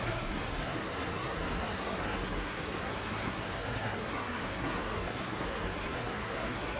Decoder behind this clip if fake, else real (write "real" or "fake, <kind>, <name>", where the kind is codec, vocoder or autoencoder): fake, codec, SNAC